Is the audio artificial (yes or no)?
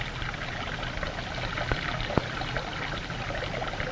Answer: no